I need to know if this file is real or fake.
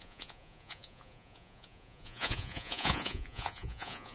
fake